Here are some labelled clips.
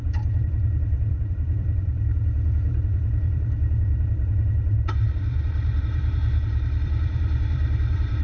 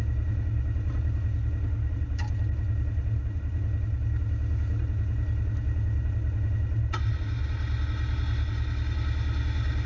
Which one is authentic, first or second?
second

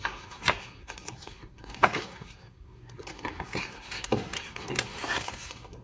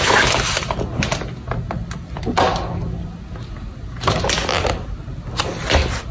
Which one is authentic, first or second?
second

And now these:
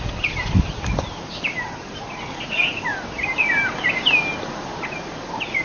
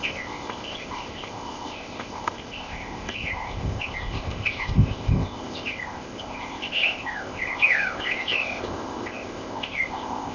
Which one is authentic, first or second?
first